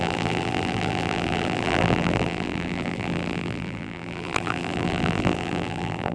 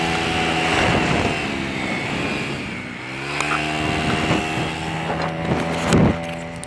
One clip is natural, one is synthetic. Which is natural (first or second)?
second